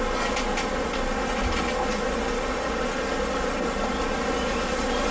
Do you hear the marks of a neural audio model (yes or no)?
no